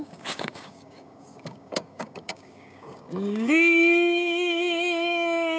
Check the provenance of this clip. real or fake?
fake